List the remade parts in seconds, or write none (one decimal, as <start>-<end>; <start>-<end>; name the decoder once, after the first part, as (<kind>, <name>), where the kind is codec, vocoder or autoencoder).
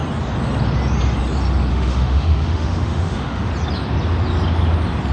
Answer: 1.7-3.5 (autoencoder, DAC-VAE)